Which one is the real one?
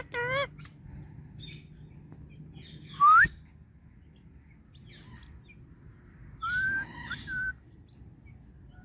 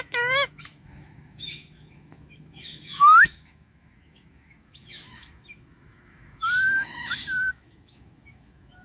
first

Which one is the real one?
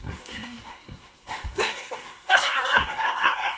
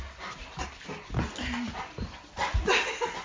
second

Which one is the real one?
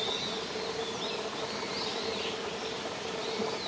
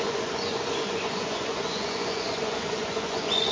first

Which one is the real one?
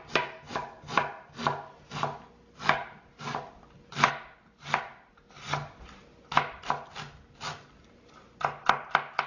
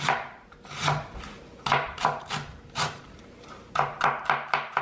first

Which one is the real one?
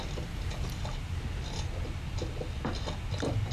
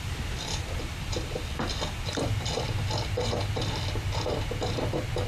first